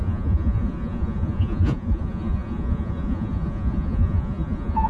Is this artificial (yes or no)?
yes